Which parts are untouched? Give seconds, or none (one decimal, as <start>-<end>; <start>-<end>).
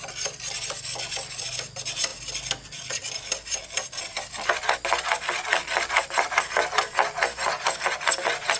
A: 0.0-8.6